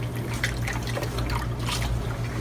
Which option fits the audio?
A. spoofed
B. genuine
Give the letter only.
B